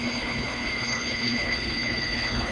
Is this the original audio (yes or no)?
no